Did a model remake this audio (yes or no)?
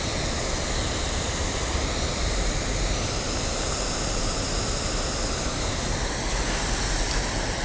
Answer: no